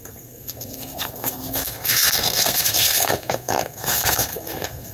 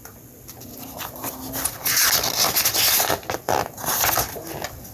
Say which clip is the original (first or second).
second